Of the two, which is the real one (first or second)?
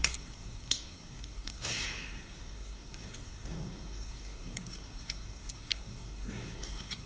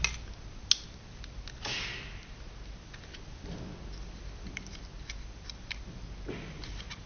second